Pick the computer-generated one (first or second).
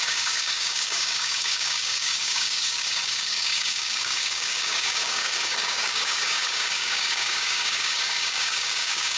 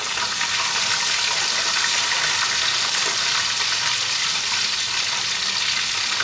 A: first